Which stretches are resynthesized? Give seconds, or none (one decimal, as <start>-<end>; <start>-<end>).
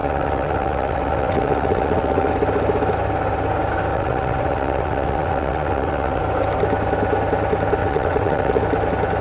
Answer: 0.0-2.3; 3.9-6.2; 7.8-8.6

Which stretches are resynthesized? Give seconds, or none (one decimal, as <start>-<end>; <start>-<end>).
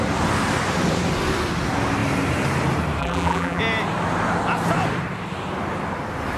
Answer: 3.0-3.6